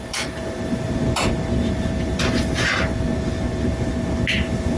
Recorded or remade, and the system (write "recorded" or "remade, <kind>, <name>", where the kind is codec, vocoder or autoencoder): recorded